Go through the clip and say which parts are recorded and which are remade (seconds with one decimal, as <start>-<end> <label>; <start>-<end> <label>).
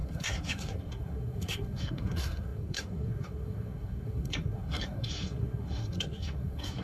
0.0-6.8 remade